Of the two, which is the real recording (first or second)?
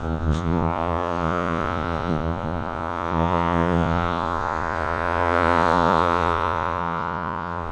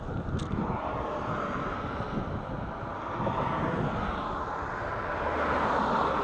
second